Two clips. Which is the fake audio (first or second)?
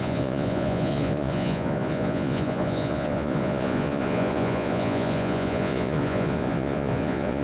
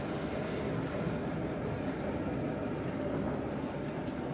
first